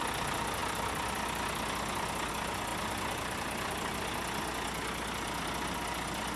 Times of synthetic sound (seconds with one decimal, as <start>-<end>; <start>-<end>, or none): 2.7-3.9